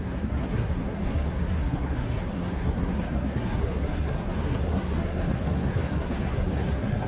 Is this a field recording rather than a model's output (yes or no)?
no